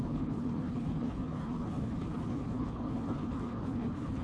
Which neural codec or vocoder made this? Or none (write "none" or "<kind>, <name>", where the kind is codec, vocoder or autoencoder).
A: codec, HILCodec